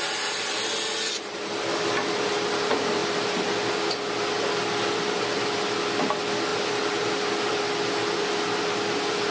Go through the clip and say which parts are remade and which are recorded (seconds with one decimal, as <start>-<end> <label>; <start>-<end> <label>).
0.0-3.0 remade; 3.0-5.1 recorded; 5.1-9.3 remade